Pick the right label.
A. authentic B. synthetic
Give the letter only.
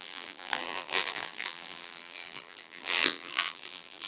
B